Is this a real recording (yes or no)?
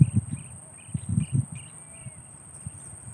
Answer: yes